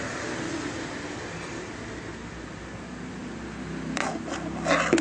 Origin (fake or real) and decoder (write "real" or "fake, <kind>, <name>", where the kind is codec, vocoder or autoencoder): real